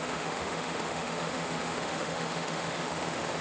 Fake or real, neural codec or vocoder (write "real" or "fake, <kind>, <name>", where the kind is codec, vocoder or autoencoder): fake, autoencoder, DAC-VAE